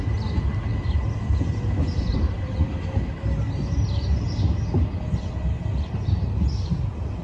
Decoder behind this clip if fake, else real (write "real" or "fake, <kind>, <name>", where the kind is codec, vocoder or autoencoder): real